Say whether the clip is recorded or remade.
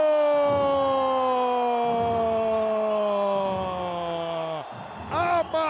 recorded